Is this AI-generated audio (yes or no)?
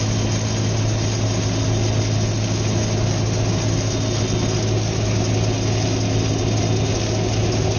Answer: no